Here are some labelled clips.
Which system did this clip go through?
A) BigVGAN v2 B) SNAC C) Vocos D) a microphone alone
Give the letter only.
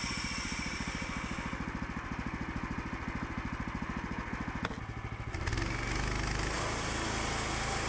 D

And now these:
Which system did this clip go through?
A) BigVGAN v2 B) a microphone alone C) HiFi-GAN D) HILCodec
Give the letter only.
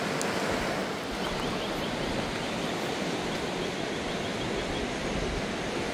B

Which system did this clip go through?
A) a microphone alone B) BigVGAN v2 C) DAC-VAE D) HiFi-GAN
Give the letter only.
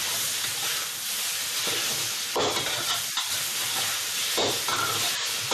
A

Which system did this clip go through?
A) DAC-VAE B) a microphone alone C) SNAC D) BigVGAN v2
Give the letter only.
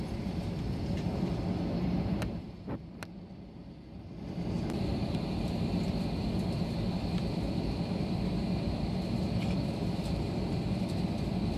D